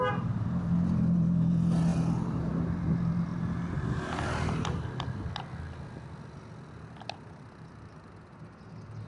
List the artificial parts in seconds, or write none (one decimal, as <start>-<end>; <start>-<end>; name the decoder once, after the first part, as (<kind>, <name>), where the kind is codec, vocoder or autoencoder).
none